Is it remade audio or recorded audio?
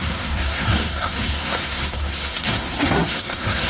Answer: remade